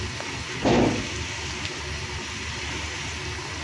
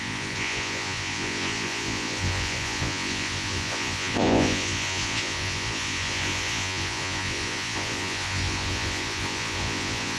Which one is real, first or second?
first